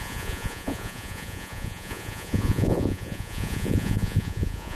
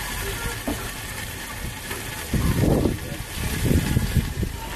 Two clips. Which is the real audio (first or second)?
second